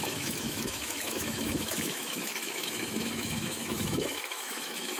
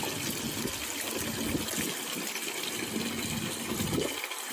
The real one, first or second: second